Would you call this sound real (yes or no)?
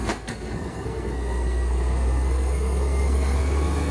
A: no